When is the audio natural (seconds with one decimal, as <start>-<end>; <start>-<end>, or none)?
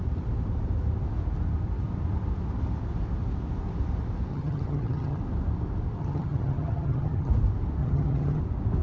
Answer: 0.0-4.3; 5.2-6.0; 7.3-7.8; 8.4-8.8